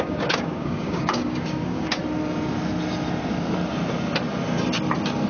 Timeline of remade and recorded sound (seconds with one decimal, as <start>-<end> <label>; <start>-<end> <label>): 0.0-2.0 remade; 2.0-5.3 recorded